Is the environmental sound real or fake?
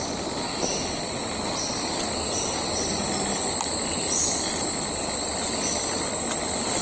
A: real